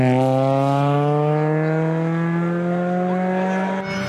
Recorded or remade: recorded